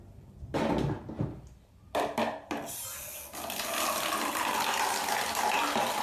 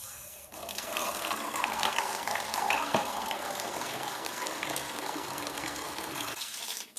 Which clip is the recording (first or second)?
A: first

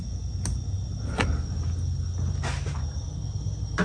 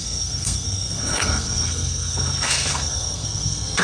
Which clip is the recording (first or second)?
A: first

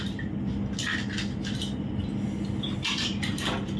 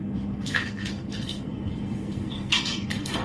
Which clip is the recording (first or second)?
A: first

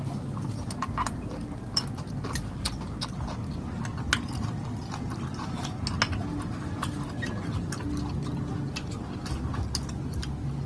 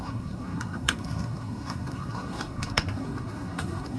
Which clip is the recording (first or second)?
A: first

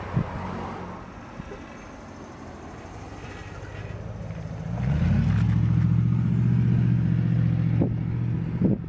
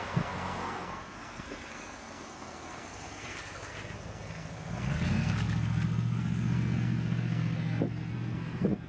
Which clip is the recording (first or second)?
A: first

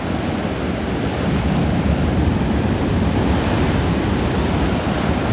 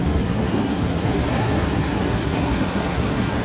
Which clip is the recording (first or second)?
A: first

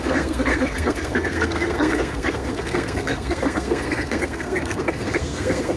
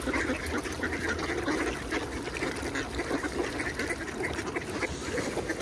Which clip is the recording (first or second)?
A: second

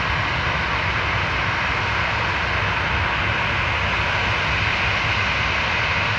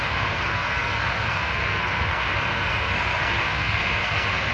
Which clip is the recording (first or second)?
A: first